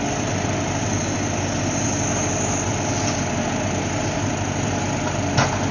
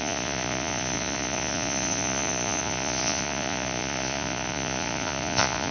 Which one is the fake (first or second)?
second